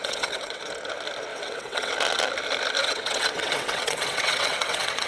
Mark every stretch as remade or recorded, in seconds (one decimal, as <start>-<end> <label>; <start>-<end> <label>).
0.0-0.6 remade; 0.6-1.3 recorded; 1.3-1.9 remade; 1.9-2.8 recorded; 2.8-5.1 remade